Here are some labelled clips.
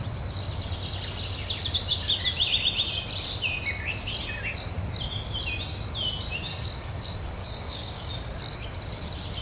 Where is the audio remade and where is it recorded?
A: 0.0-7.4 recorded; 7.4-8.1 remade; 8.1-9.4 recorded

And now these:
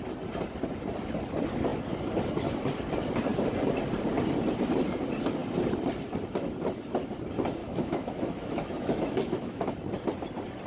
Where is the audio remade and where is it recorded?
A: 0.0-7.6 recorded; 7.6-9.7 remade; 9.7-10.7 recorded

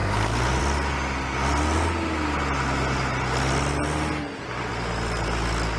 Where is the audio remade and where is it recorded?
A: 0.0-5.8 recorded

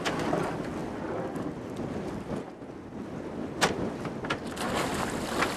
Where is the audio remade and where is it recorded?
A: 0.0-5.6 recorded

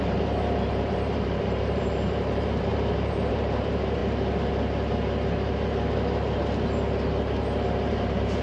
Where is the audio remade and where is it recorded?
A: 0.0-4.0 remade; 4.0-7.9 recorded; 7.9-8.4 remade

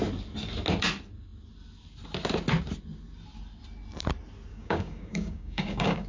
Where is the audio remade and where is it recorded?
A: 0.0-4.5 recorded; 4.5-6.1 remade

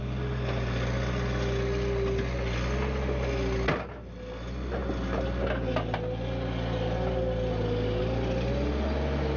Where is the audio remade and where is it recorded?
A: 0.0-9.4 recorded

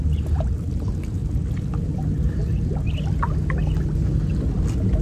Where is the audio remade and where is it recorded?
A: 0.0-5.0 recorded